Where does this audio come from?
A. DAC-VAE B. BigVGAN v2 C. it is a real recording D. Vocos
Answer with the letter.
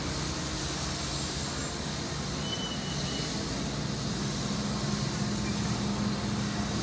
C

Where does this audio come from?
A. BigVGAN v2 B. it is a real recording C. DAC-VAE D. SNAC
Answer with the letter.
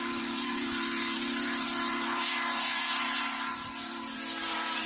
A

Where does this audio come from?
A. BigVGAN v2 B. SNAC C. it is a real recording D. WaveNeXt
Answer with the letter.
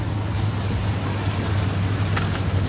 C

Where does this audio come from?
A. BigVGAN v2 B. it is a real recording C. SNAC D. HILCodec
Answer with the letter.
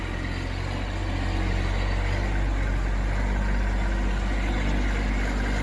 B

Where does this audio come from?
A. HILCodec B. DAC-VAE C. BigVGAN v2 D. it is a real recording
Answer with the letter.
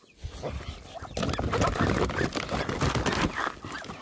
D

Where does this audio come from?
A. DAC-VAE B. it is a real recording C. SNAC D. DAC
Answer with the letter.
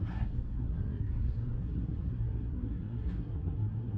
C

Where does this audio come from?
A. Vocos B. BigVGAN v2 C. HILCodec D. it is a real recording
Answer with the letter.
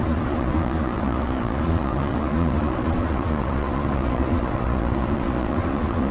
A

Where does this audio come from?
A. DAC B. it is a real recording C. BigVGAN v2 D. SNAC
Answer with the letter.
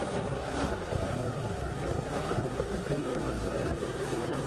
D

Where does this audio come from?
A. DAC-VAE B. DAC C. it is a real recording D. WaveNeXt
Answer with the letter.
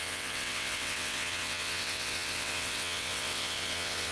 D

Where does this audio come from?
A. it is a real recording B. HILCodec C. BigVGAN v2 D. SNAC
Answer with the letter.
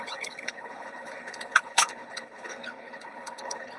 B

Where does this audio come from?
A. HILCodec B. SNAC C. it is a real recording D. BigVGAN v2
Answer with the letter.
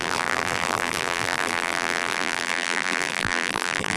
D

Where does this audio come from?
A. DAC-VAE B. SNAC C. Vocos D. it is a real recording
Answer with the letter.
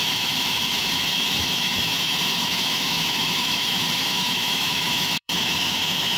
A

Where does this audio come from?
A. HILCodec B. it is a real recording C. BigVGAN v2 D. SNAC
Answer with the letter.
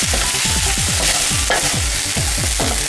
B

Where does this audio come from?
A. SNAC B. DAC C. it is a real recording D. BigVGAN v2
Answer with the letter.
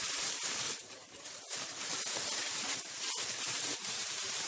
D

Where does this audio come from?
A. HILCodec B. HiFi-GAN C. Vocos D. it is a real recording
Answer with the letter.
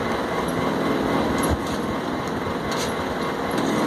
D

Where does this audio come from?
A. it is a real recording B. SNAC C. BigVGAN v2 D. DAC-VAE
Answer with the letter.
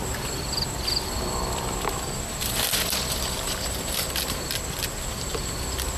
C